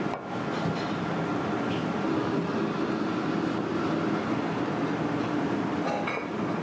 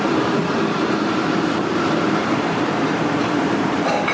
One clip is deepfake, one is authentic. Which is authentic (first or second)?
first